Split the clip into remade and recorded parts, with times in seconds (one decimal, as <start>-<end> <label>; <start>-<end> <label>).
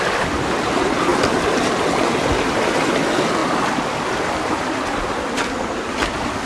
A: 0.0-6.5 recorded